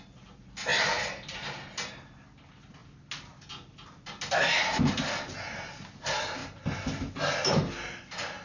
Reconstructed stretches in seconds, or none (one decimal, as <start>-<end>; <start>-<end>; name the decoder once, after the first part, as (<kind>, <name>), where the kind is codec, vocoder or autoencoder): none